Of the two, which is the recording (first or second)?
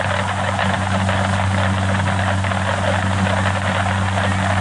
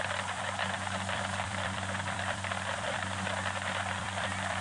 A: first